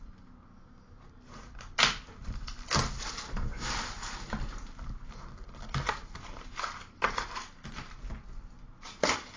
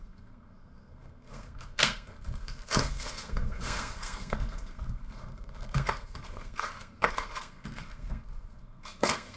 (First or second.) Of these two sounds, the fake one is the second